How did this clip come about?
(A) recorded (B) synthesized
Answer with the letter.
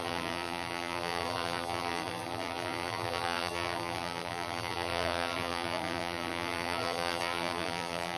B